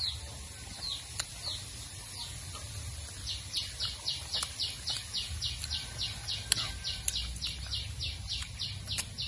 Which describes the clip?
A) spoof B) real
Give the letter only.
B